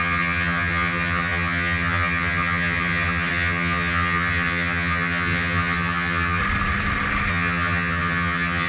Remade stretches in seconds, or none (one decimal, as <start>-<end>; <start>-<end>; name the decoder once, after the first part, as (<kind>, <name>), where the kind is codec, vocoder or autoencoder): 0.0-6.4 (vocoder, HiFi-GAN); 7.3-8.7